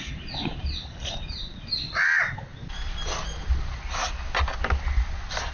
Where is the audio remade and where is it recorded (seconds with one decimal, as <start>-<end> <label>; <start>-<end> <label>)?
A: 0.0-5.5 recorded